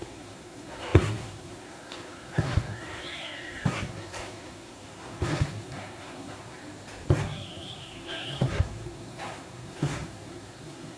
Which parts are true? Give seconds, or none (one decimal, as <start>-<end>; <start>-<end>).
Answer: 6.6-7.2